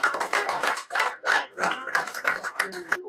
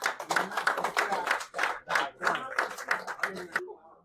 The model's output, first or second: first